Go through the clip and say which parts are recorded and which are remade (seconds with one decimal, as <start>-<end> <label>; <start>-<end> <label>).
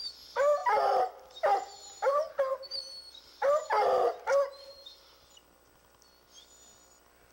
0.0-7.3 recorded